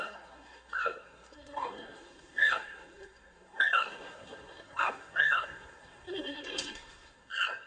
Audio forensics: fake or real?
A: fake